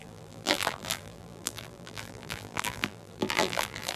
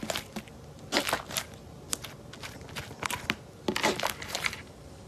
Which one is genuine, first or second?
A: second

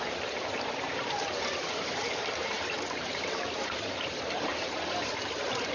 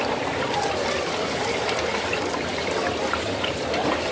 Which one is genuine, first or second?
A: second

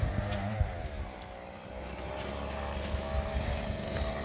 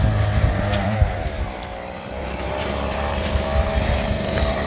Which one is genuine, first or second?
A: first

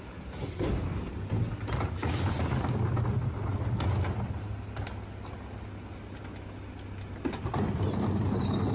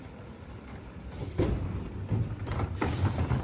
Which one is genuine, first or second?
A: first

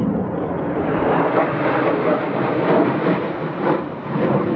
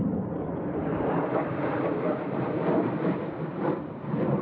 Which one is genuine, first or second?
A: first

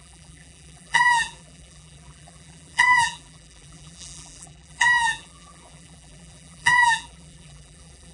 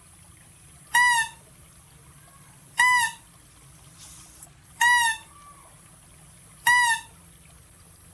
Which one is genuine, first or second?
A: second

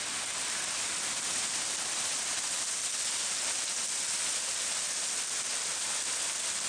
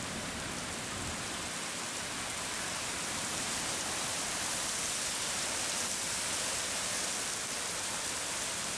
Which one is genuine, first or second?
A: first